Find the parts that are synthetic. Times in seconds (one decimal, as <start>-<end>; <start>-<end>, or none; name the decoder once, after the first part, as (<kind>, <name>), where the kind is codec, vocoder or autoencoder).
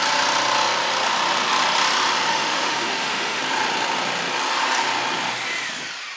2.3-3.4 (autoencoder, DAC-VAE)